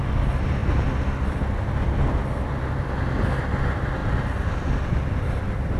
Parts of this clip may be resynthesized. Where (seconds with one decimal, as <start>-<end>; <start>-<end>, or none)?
none

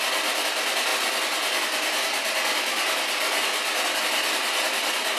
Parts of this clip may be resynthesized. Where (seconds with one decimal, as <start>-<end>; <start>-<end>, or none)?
none